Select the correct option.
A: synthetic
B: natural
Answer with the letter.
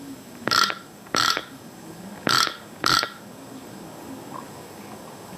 A